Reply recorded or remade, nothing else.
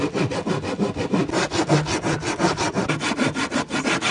recorded